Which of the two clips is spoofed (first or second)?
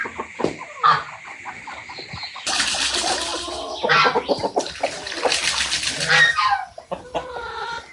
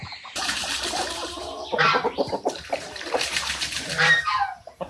second